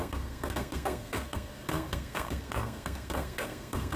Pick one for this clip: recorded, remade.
remade